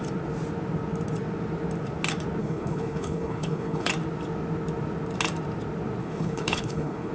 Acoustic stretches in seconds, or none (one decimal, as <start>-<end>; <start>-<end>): 0.0-2.4; 3.9-6.0